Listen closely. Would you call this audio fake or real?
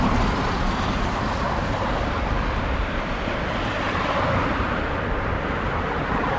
real